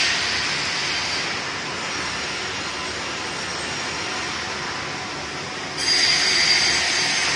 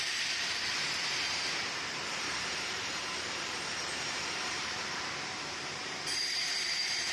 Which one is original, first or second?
first